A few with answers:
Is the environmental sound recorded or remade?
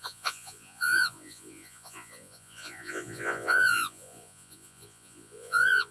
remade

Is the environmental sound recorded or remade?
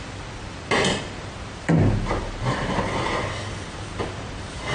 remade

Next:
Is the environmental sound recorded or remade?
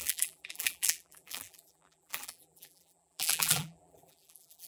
remade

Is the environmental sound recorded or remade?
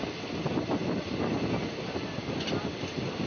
recorded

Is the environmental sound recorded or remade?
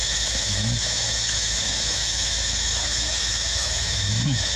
remade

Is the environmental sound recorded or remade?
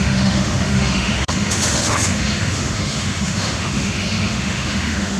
remade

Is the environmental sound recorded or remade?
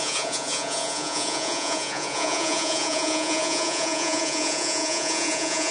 remade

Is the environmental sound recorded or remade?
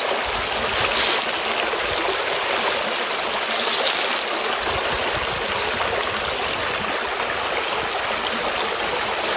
recorded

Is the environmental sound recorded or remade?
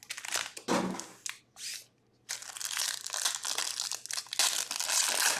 recorded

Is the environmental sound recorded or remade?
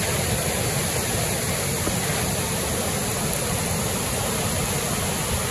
recorded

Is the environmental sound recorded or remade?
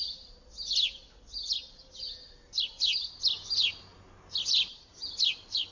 recorded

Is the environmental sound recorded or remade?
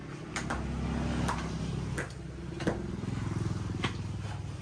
recorded